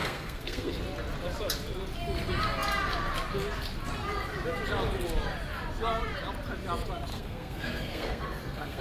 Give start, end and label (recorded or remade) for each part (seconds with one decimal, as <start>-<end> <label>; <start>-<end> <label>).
0.0-0.7 remade; 0.7-7.1 recorded; 7.1-8.8 remade